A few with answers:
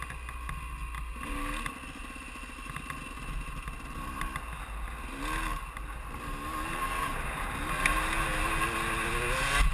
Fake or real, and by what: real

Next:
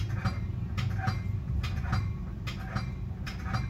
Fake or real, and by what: real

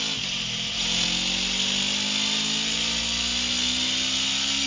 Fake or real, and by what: real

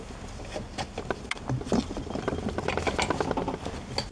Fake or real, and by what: real